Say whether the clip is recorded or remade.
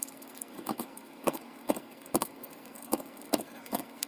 remade